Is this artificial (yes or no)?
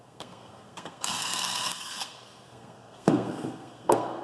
yes